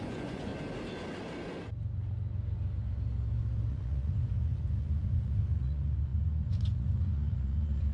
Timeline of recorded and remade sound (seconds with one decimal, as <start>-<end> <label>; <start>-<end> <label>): 0.0-0.5 remade; 0.5-3.7 recorded; 3.7-7.9 remade